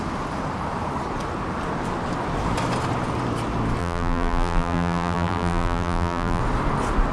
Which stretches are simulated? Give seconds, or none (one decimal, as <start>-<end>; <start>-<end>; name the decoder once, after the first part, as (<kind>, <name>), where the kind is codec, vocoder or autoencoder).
3.8-6.4 (vocoder, BigVGAN v2)

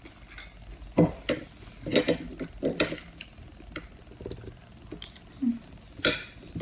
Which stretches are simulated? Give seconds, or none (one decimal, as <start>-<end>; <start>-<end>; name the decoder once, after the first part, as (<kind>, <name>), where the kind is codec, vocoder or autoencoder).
5.6-6.6 (vocoder, BigVGAN v2)

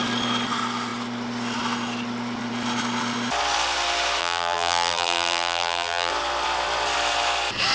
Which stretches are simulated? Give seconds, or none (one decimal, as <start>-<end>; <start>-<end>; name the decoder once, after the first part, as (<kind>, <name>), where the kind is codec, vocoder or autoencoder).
4.2-6.1 (vocoder, BigVGAN v2)

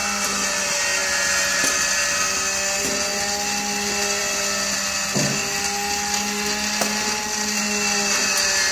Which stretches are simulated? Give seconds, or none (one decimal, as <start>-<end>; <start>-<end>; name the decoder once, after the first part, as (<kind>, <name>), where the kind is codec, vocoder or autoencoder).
0.0-0.6 (vocoder, BigVGAN v2)

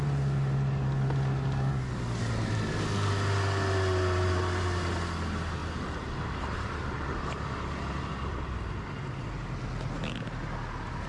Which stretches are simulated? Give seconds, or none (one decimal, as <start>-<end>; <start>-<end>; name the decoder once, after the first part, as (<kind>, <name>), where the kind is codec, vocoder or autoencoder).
5.6-6.8 (vocoder, BigVGAN v2); 8.1-8.7